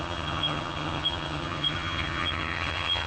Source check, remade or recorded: remade